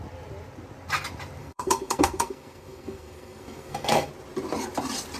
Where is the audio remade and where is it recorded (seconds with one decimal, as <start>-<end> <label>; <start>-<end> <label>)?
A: 0.0-1.4 recorded; 1.4-4.1 remade; 4.1-5.2 recorded